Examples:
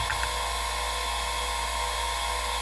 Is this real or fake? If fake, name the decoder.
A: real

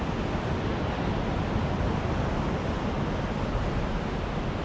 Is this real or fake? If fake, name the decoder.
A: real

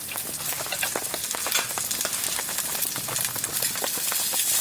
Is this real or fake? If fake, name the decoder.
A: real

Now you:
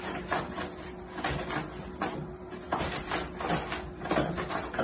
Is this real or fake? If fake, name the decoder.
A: real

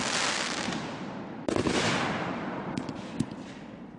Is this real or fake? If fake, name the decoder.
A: real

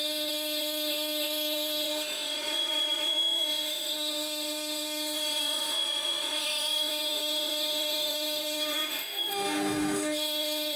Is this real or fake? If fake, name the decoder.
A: fake, autoencoder, DAC-VAE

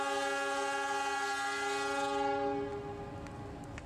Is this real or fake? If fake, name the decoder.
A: real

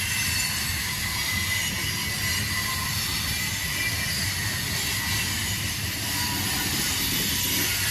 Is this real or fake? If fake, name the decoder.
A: real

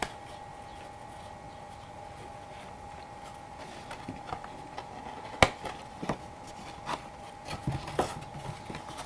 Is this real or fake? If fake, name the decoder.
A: real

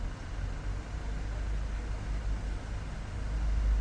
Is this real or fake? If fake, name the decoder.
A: real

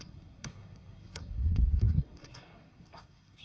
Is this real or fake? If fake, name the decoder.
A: fake, codec, SNAC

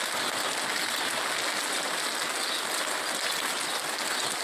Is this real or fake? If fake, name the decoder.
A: real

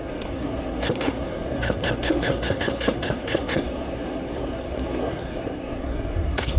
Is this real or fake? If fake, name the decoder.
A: fake, codec, SNAC